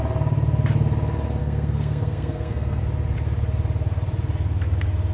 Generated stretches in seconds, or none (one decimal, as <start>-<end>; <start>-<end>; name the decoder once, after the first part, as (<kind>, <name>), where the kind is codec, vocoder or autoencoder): 1.4-2.8 (codec, SNAC)